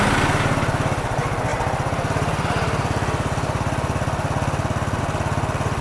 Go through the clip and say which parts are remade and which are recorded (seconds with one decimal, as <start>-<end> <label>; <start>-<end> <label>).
0.0-5.8 recorded